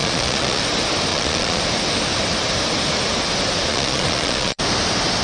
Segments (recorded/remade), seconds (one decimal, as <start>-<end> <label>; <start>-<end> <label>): 0.0-0.6 remade; 0.6-1.1 recorded; 1.1-1.6 remade; 1.6-3.7 recorded; 3.7-4.6 remade; 4.6-5.2 recorded